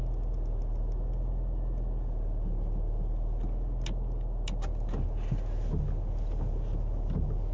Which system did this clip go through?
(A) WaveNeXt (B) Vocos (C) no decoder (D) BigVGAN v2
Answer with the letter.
C